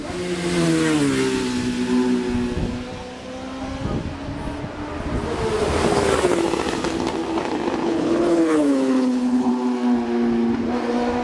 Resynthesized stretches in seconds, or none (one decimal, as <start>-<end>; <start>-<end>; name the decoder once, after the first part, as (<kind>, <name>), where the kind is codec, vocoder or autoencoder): 7.8-9.5 (codec, HILCodec)